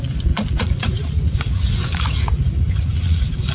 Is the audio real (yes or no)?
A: no